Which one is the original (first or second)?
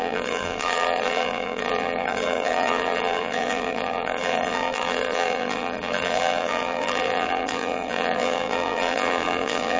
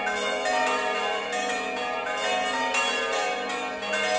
second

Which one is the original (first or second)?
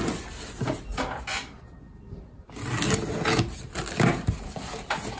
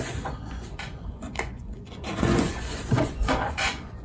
first